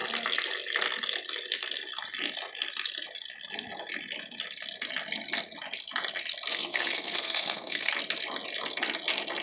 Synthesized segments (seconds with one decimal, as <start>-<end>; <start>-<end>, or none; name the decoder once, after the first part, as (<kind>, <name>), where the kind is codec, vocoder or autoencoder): 6.5-7.9 (codec, SNAC)

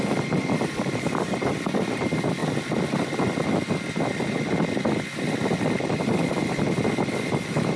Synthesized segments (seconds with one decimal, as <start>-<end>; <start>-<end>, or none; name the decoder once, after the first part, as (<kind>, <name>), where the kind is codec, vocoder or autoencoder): none

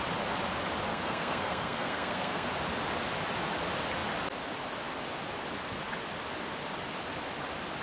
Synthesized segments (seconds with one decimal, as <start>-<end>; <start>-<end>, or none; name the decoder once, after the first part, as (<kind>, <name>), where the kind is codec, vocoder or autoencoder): 0.9-2.5 (codec, SNAC)

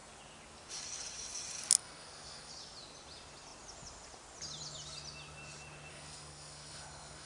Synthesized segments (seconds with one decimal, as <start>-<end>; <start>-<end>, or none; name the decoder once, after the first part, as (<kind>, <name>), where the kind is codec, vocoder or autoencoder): 1.8-2.5 (codec, SNAC); 5.9-7.3

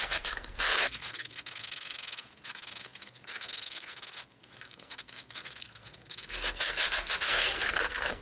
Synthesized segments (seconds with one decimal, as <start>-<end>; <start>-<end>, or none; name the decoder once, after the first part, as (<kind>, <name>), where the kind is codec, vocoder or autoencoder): 0.0-8.2 (codec, SNAC)